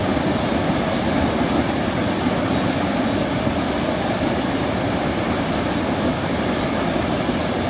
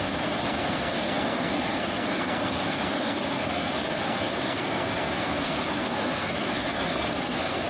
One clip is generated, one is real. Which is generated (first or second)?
second